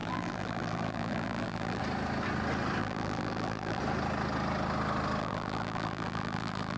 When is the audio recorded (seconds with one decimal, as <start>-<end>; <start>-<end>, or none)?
1.8-2.8; 3.8-5.2